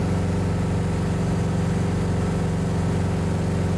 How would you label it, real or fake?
real